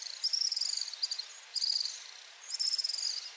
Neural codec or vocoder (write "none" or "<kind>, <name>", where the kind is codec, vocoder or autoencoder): none